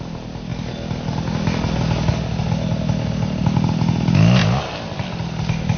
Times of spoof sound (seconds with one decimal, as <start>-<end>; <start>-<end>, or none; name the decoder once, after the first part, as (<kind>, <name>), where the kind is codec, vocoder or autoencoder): none

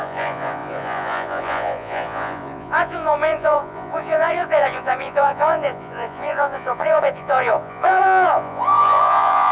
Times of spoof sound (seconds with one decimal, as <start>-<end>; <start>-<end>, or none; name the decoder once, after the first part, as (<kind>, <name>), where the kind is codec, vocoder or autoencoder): 0.0-9.5 (vocoder, Vocos)

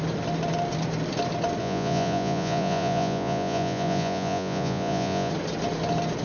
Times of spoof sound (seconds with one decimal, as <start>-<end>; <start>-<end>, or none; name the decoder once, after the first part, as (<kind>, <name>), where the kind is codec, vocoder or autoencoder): 1.6-5.3 (vocoder, Vocos)

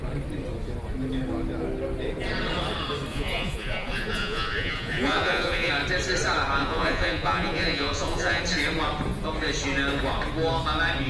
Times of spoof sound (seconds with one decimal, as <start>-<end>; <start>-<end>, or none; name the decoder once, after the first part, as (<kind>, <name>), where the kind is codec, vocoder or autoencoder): 3.1-5.7 (vocoder, Vocos); 6.6-8.4

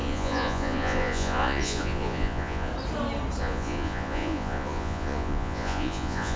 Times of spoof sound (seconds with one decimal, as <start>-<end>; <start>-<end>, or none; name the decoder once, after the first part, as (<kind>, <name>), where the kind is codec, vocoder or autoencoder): 0.0-2.7 (vocoder, Vocos); 3.4-6.4

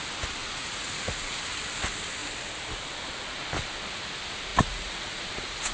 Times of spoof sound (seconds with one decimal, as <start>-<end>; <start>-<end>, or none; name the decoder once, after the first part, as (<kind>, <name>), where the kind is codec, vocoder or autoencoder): 0.4-1.4 (vocoder, Vocos); 4.5-5.7

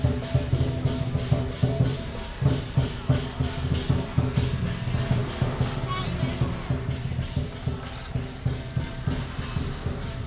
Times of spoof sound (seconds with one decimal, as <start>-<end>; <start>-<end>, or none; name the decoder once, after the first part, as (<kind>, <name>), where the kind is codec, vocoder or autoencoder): none

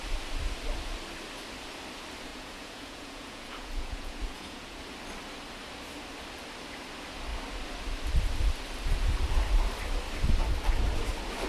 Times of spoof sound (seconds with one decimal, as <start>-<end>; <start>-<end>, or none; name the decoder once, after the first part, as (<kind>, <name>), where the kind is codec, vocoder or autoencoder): 2.3-4.8 (vocoder, Vocos)